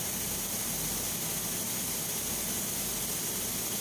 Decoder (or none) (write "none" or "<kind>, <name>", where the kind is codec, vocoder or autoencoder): none